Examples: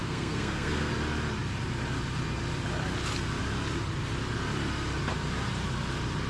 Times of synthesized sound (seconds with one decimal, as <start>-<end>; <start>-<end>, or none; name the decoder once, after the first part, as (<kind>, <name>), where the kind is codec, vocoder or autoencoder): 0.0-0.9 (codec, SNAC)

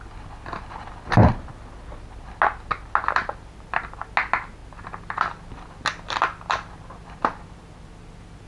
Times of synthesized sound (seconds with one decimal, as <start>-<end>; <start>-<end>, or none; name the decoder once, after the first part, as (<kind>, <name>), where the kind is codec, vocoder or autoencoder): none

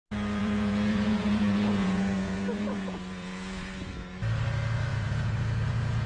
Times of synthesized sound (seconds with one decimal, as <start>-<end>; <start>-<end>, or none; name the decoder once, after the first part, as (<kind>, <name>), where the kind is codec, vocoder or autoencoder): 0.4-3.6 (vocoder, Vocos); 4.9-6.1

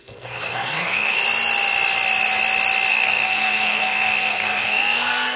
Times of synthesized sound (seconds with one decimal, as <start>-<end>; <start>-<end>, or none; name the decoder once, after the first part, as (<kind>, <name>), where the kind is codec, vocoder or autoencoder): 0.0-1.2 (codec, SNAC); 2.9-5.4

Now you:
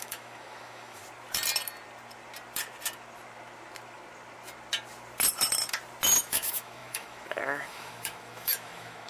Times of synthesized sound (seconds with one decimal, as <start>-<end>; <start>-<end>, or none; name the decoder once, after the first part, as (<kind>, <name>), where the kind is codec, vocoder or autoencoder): 0.0-1.0 (autoencoder, DAC-VAE); 6.2-9.1